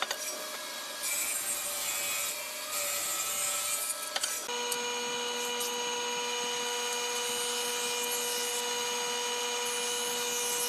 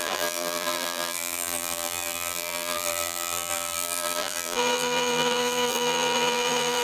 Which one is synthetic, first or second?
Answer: second